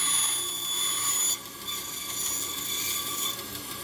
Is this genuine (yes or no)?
yes